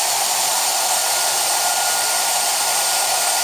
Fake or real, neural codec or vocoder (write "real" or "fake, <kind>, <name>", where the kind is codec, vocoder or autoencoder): fake, vocoder, BigVGAN v2